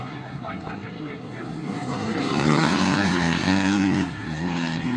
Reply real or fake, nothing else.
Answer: fake